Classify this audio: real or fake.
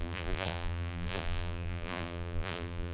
fake